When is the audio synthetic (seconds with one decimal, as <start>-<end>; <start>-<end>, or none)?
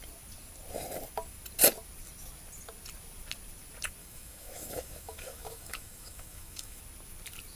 4.0-6.8